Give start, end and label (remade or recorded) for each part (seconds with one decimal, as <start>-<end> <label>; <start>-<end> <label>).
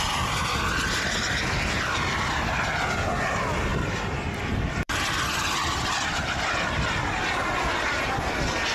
0.0-3.7 recorded; 3.7-6.4 remade; 6.4-8.7 recorded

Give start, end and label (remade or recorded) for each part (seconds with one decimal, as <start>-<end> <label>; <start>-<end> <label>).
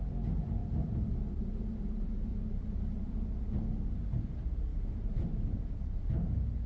0.0-2.3 recorded; 2.3-3.1 remade; 3.1-4.7 recorded; 4.7-6.3 remade; 6.3-6.7 recorded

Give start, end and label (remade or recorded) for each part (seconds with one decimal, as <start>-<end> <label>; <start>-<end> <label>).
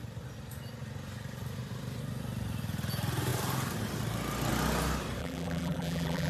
0.0-5.2 recorded; 5.2-6.3 remade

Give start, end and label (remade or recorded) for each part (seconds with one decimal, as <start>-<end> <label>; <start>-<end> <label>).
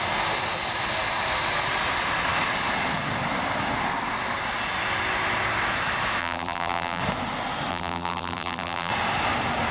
0.0-6.2 recorded; 6.2-7.0 remade; 7.0-7.7 recorded; 7.7-8.9 remade; 8.9-9.7 recorded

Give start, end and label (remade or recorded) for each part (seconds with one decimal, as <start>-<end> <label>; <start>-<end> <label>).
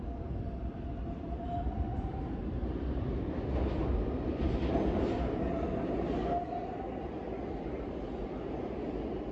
0.0-9.3 recorded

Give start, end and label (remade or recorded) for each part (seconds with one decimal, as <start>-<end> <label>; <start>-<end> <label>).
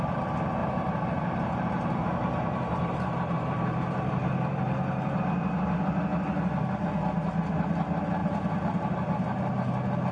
0.0-0.6 recorded; 0.6-5.2 remade; 5.2-8.2 recorded; 8.2-8.9 remade; 8.9-10.1 recorded